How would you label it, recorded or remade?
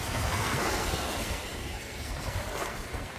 remade